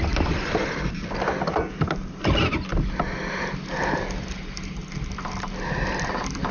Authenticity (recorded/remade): recorded